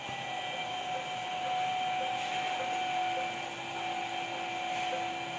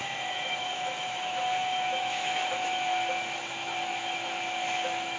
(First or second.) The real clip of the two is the first